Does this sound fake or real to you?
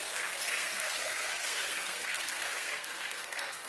fake